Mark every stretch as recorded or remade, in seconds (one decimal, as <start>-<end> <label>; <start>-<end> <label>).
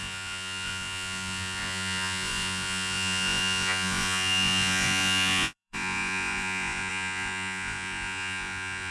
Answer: 0.0-8.9 remade